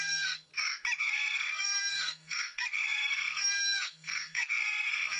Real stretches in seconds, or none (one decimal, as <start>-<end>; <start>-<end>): 0.5-1.0